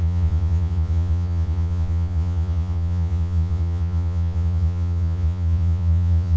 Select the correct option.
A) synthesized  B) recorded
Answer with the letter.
A